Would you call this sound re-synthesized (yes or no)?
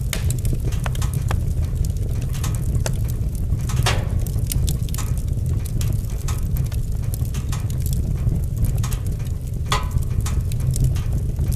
no